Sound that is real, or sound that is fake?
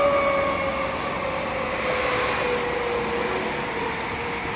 real